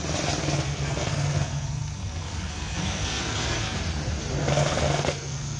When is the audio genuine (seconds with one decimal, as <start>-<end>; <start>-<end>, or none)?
0.0-0.4; 3.8-4.4